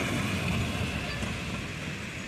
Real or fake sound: real